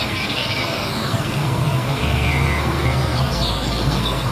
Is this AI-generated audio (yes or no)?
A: yes